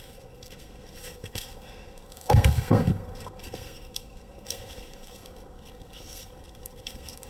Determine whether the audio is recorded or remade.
remade